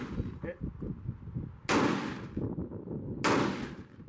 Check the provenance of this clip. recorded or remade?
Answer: recorded